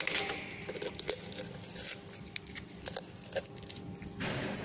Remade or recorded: recorded